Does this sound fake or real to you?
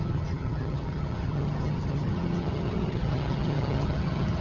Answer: fake